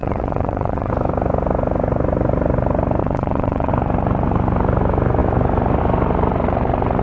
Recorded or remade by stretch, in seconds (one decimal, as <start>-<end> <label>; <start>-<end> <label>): 0.0-0.9 remade; 0.9-3.0 recorded; 3.0-3.7 remade; 3.7-7.0 recorded

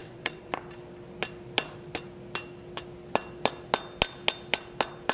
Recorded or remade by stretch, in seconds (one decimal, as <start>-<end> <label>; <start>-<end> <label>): 0.0-0.5 remade; 0.5-5.1 recorded

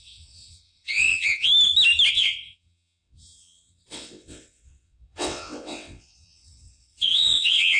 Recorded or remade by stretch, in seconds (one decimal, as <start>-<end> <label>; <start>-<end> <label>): 0.0-1.5 remade; 1.5-2.1 recorded; 2.1-7.8 remade

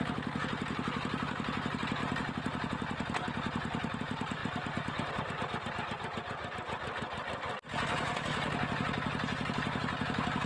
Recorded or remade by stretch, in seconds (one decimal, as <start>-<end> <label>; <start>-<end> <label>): 0.0-10.5 recorded

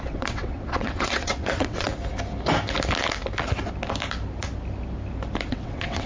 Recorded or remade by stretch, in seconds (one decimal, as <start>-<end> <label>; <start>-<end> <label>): 0.0-1.9 remade; 1.9-5.5 recorded; 5.5-6.1 remade

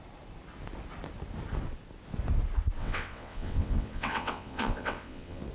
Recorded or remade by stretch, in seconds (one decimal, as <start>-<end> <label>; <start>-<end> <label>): 0.0-2.8 recorded; 2.8-5.5 remade

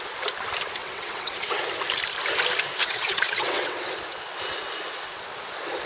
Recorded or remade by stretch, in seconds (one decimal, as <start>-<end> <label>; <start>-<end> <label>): 0.0-0.8 recorded; 0.8-1.6 remade; 1.6-2.8 recorded; 2.8-3.9 remade; 3.9-5.9 recorded

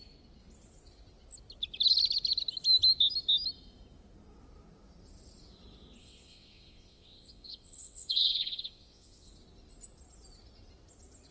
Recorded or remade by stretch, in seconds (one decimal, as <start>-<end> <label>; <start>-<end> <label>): 0.0-6.0 recorded; 6.0-9.3 remade; 9.3-11.3 recorded